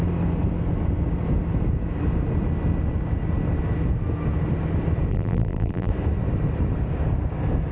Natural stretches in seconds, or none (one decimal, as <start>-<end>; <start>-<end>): 0.0-5.1; 5.9-7.7